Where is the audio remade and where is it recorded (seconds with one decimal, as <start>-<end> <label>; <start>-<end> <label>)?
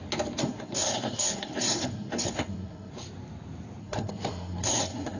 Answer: 0.0-0.4 recorded; 0.4-2.9 remade; 2.9-3.8 recorded; 3.8-5.2 remade